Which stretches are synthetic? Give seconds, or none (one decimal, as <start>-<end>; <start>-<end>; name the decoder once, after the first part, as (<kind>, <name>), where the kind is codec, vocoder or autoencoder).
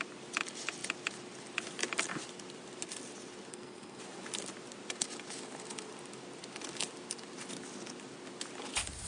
3.5-4.0 (codec, SNAC)